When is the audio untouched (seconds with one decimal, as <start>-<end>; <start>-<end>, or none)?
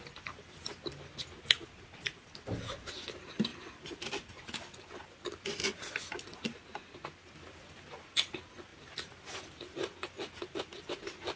0.0-11.4